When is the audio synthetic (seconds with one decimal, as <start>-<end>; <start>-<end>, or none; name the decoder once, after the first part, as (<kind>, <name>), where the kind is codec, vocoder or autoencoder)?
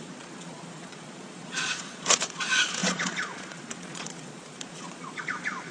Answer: 0.0-5.7 (vocoder, Vocos)